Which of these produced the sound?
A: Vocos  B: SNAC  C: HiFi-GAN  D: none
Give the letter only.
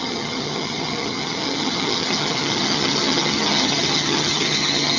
C